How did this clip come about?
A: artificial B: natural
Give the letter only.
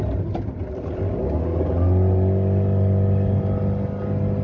B